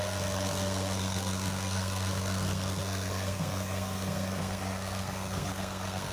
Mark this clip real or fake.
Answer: fake